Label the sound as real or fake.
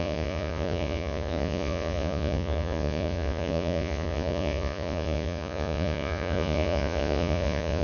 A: fake